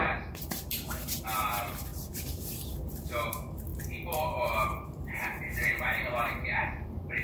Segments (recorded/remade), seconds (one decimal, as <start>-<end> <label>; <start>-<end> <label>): 0.0-7.2 remade